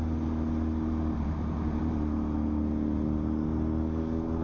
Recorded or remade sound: recorded